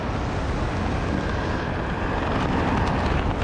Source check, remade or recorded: recorded